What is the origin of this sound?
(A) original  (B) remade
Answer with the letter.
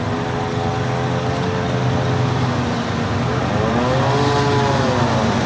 A